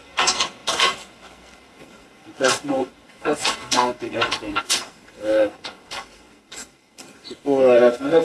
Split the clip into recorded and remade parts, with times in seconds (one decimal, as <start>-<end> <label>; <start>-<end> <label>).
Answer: 0.0-8.2 remade

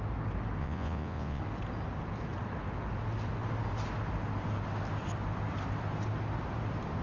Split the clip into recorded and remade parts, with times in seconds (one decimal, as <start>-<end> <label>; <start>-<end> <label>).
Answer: 0.0-0.6 recorded; 0.6-1.4 remade; 1.4-7.0 recorded

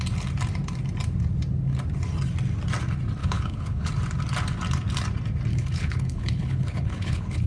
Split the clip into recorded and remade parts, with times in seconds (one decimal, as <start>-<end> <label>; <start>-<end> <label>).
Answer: 0.0-3.2 recorded; 3.2-3.9 remade; 3.9-5.5 recorded; 5.5-7.5 remade

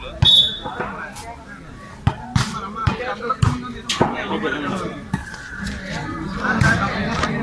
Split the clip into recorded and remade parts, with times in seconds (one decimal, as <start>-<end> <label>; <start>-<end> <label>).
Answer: 0.0-7.4 recorded

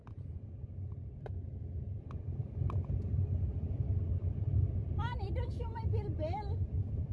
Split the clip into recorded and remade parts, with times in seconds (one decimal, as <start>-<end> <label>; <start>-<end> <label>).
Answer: 0.0-3.5 recorded; 3.5-4.0 remade; 4.0-7.1 recorded

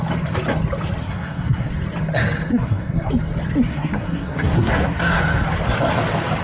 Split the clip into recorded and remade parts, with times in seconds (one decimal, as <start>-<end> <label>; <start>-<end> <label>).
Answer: 0.0-1.0 recorded; 1.0-1.7 remade; 1.7-2.5 recorded; 2.5-3.1 remade; 3.1-3.7 recorded; 3.7-5.2 remade; 5.2-6.4 recorded